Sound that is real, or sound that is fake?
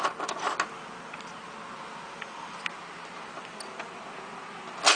real